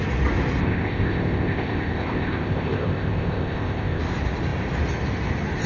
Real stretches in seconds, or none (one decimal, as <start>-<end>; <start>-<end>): 0.0-0.6; 4.0-5.7